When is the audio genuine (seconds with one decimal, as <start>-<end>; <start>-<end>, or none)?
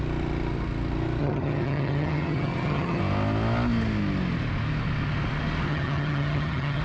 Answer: 0.0-1.2; 3.0-5.7